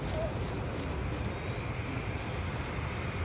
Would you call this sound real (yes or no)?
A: yes